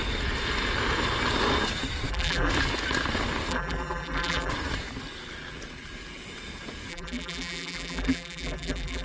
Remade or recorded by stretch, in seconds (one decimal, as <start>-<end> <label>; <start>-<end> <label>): 0.0-2.1 recorded; 2.1-2.5 remade; 2.5-3.5 recorded; 3.5-4.5 remade; 4.5-6.9 recorded; 6.9-9.0 remade